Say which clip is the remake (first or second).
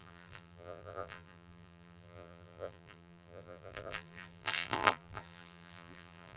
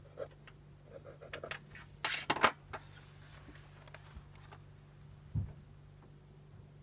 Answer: first